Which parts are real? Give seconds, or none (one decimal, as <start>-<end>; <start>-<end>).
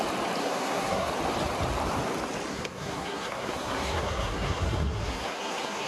0.0-0.4; 1.1-2.5